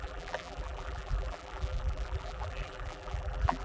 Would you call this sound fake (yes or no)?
yes